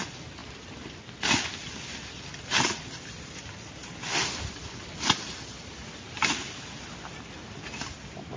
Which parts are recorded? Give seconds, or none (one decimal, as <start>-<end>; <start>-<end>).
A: 0.0-8.4